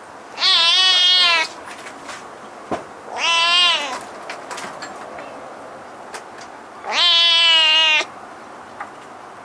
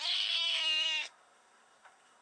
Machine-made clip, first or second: second